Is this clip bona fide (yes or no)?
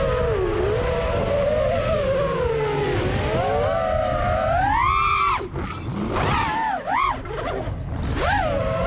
yes